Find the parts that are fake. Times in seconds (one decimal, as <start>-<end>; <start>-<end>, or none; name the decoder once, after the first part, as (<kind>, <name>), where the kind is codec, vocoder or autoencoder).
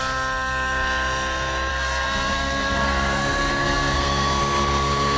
1.7-4.4 (codec, SNAC)